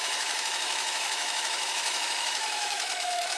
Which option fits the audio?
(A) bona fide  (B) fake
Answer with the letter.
B